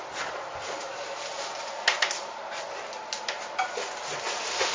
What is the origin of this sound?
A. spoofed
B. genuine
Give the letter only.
B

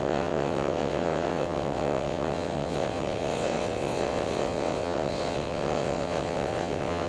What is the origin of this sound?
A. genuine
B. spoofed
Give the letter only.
B